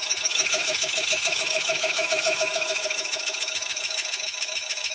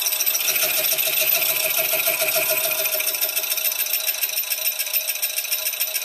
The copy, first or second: first